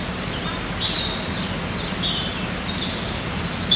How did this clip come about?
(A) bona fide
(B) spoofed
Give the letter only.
A